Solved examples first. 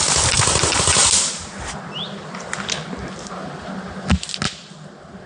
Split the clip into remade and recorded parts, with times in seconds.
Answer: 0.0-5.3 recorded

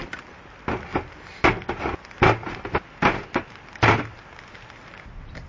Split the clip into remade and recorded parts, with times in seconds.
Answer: 0.0-5.5 recorded

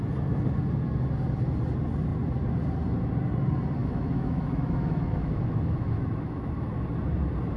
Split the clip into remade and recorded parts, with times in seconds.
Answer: 0.0-3.8 recorded; 3.8-6.7 remade; 6.7-7.6 recorded

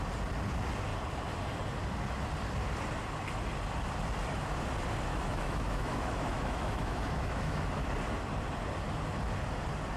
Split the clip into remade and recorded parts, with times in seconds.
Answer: 0.0-5.1 recorded; 5.1-7.9 remade; 7.9-10.0 recorded

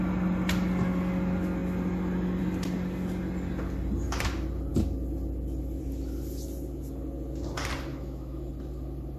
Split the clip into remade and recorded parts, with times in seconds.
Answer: 0.0-7.9 recorded; 7.9-8.5 remade; 8.5-9.2 recorded

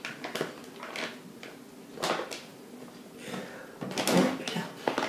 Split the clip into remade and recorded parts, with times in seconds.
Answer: 0.0-5.1 recorded

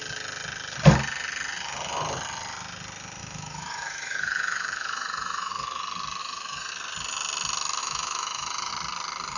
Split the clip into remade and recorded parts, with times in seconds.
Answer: 0.0-3.2 recorded; 3.2-5.5 remade; 5.5-6.2 recorded; 6.2-6.7 remade; 6.7-7.8 recorded; 7.8-8.7 remade; 8.7-9.4 recorded

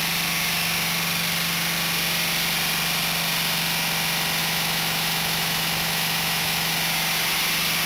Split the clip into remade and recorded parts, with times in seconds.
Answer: 0.0-4.4 recorded; 4.4-6.7 remade; 6.7-7.9 recorded